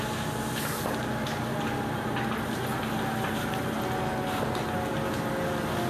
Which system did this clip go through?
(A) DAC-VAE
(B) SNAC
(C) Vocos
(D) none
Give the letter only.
D